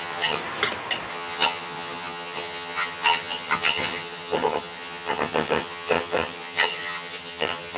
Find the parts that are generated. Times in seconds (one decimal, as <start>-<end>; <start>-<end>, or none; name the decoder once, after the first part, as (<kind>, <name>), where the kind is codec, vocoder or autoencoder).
0.0-0.4 (vocoder, HiFi-GAN); 1.1-7.8